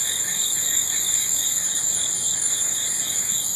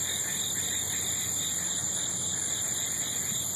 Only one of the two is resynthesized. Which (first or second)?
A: first